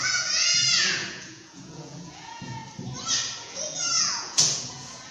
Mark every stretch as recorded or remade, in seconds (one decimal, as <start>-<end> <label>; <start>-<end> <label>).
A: 0.0-2.6 remade; 2.6-3.4 recorded; 3.4-5.1 remade